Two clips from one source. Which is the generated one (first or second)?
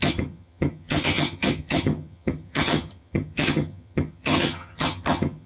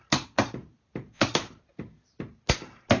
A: first